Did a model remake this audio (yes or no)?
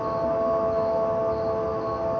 no